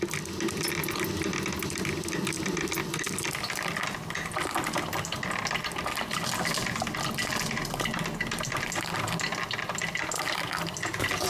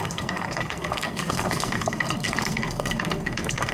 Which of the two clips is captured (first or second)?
first